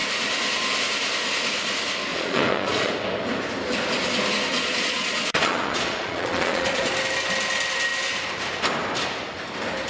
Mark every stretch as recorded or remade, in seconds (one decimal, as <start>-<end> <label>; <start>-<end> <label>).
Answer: 0.0-2.1 recorded; 2.1-2.9 remade; 2.9-4.5 recorded; 4.5-6.9 remade; 6.9-9.9 recorded